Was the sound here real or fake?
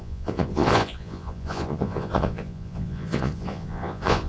fake